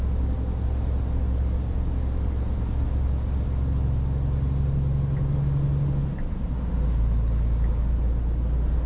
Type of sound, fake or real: real